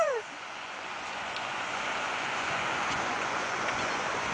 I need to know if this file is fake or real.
fake